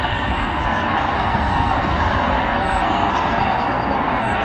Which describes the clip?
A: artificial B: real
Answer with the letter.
A